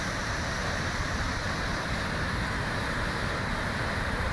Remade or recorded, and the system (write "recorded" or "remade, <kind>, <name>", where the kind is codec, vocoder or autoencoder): remade, vocoder, BigVGAN v2